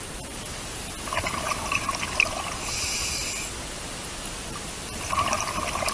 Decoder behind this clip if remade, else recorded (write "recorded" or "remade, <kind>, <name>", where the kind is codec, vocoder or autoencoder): recorded